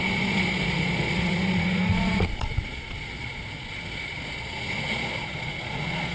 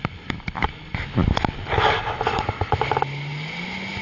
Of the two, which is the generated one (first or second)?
first